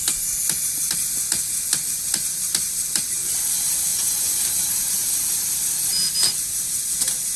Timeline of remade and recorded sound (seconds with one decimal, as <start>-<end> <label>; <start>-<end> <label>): 0.0-3.9 recorded; 3.9-4.4 remade; 4.4-7.4 recorded